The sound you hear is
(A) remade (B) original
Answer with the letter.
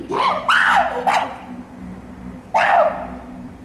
B